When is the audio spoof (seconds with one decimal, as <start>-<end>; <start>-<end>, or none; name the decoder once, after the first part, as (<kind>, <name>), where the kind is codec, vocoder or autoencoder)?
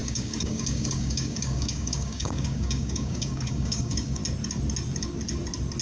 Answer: 0.0-4.2 (codec, DAC)